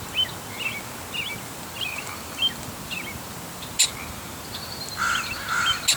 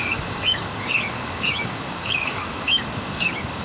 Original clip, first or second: first